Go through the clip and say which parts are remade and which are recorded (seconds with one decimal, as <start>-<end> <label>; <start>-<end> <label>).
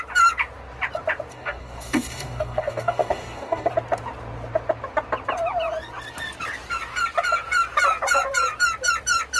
0.0-1.3 recorded; 1.3-3.7 remade; 3.7-9.4 recorded